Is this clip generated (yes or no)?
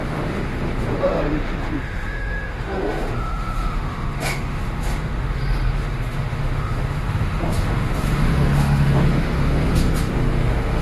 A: yes